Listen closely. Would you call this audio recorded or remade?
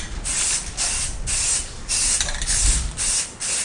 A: recorded